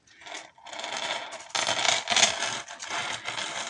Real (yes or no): yes